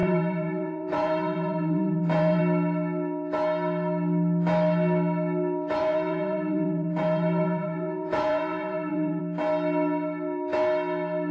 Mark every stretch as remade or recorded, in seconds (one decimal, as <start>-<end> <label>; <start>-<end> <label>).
0.0-2.4 remade; 2.4-5.8 recorded; 5.8-9.2 remade; 9.2-11.3 recorded